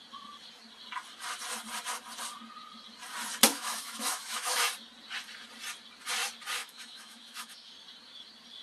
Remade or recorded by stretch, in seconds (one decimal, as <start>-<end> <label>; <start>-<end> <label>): 0.0-3.5 recorded; 3.5-4.7 remade; 4.7-6.6 recorded; 6.6-7.7 remade; 7.7-8.6 recorded